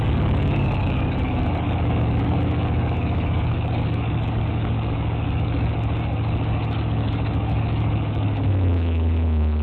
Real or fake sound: fake